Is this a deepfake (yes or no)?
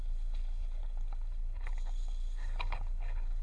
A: yes